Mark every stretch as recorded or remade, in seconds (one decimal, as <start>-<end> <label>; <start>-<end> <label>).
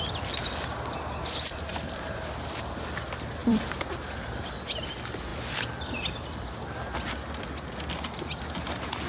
0.0-1.7 recorded; 1.7-2.8 remade; 2.8-3.4 recorded; 3.4-4.6 remade; 4.6-9.1 recorded